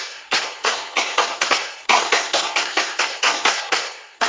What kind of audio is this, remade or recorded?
remade